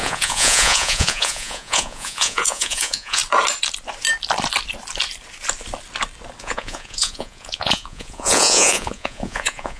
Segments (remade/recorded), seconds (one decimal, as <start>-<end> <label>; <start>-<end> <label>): 0.0-3.2 remade; 3.2-6.4 recorded; 6.4-9.8 remade